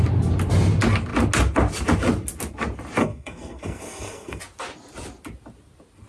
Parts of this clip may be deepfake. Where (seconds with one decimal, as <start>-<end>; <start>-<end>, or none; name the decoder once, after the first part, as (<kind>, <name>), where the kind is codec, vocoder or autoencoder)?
3.0-4.4 (codec, SNAC)